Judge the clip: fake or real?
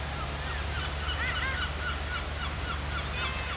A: real